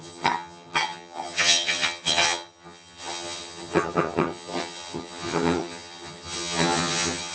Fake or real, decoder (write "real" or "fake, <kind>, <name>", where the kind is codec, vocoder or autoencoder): fake, vocoder, HiFi-GAN